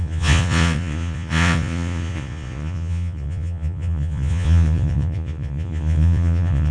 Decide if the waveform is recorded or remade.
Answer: remade